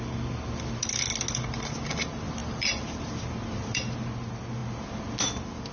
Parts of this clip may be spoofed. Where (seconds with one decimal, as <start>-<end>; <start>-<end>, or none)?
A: 2.4-3.9